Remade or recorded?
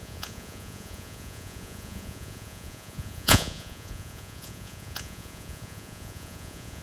remade